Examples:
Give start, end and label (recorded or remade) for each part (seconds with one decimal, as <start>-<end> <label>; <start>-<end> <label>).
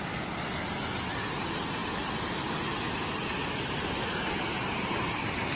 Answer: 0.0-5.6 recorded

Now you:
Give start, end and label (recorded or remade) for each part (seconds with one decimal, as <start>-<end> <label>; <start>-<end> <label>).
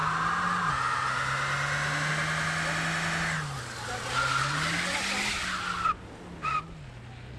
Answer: 0.0-7.4 recorded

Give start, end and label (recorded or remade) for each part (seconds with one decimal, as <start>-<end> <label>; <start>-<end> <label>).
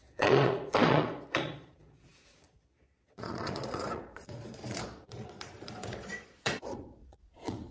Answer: 0.0-7.7 remade